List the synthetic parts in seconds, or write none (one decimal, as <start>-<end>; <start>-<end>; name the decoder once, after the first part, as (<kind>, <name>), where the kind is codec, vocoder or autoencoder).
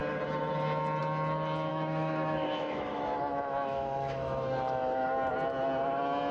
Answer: 1.7-5.3 (autoencoder, DAC-VAE)